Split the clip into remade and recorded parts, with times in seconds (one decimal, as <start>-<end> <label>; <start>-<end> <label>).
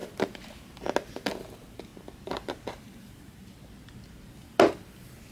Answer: 0.0-0.7 remade; 0.7-1.9 recorded; 1.9-3.2 remade; 3.2-5.3 recorded